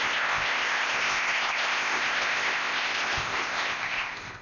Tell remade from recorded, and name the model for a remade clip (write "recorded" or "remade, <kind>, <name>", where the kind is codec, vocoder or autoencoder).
remade, codec, ZipCodec